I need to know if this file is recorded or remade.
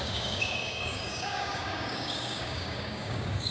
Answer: remade